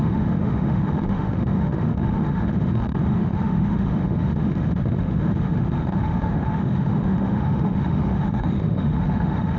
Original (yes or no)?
no